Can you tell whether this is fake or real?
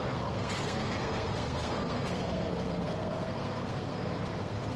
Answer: fake